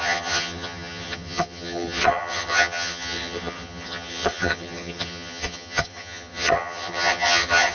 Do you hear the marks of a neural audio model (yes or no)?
yes